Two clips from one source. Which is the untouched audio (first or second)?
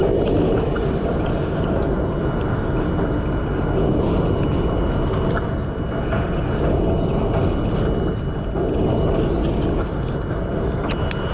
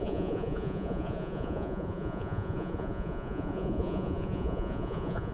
first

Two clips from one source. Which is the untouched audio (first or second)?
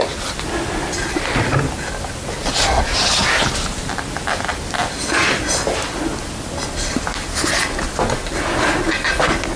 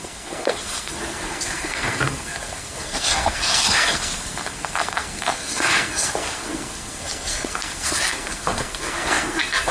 first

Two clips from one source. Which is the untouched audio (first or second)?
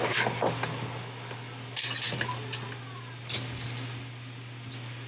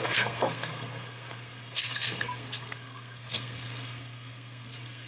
first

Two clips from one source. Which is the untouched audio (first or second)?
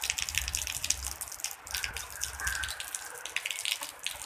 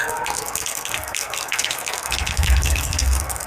first